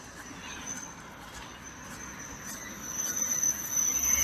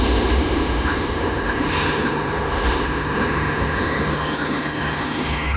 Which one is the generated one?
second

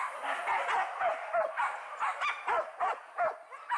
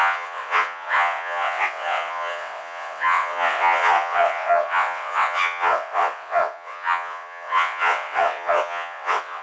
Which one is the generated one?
second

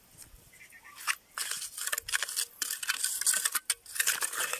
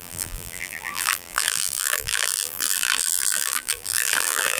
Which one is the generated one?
second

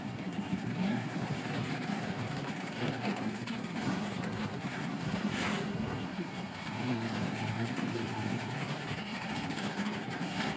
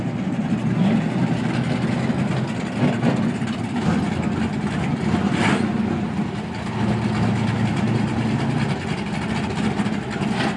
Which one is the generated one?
first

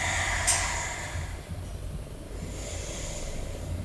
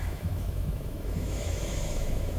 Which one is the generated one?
second